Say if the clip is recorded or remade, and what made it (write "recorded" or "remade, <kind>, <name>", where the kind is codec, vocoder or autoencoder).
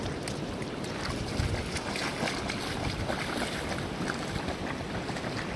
recorded